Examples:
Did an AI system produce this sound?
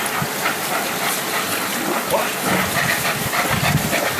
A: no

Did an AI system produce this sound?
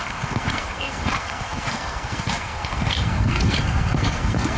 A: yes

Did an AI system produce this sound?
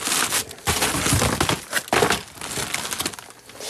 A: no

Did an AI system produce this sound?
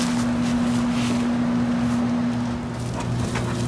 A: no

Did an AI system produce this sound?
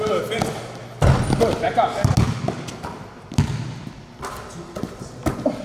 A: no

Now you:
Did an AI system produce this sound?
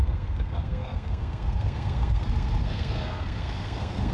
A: yes